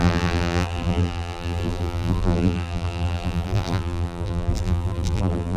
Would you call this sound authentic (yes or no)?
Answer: no